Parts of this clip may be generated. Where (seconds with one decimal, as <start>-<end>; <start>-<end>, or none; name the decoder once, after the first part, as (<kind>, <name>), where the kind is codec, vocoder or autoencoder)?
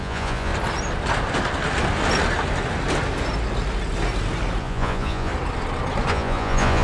0.0-0.5 (vocoder, Vocos); 4.6-5.3; 6.1-6.8